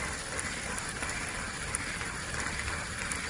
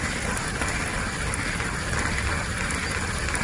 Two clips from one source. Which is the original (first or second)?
second